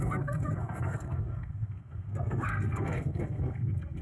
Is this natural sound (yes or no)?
no